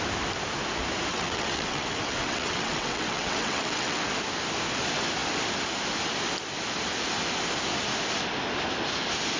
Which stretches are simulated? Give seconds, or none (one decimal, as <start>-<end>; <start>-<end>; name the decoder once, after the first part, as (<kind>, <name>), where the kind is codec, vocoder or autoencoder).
1.1-4.1 (vocoder, WaveNeXt)